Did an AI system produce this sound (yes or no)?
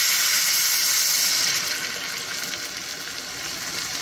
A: no